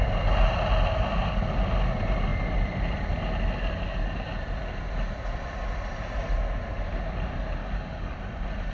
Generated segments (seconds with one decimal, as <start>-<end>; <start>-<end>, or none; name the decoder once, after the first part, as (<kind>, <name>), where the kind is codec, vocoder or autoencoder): 7.6-8.2 (codec, DAC)